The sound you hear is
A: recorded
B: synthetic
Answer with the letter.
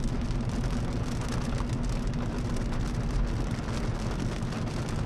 A